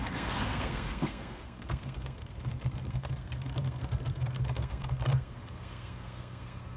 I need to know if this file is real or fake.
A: fake